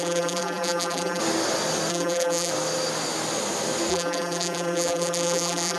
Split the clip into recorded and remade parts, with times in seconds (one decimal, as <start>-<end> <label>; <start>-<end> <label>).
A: 0.0-1.2 remade; 1.2-1.9 recorded; 1.9-2.5 remade; 2.5-3.9 recorded; 3.9-5.8 remade